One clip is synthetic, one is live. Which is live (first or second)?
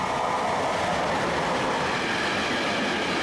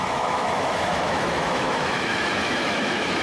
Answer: first